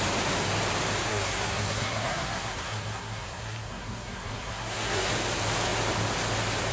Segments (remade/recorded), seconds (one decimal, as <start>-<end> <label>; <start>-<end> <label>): 0.0-1.1 recorded; 1.1-5.1 remade; 5.1-6.7 recorded